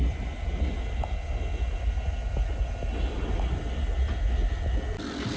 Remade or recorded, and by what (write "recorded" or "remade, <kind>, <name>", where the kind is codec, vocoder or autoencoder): recorded